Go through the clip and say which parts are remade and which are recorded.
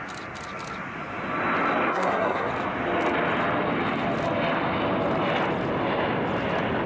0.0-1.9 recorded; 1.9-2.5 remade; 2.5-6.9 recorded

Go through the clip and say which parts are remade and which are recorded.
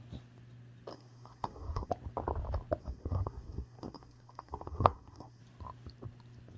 0.0-0.9 recorded; 0.9-1.9 remade; 1.9-2.8 recorded; 2.8-5.4 remade; 5.4-6.6 recorded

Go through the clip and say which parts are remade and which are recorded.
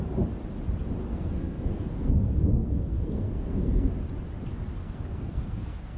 0.0-1.1 recorded; 1.1-3.9 remade; 3.9-4.8 recorded; 4.8-6.0 remade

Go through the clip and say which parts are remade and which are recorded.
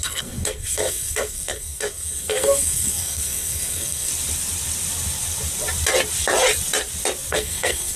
0.0-4.1 remade; 4.1-7.3 recorded; 7.3-8.0 remade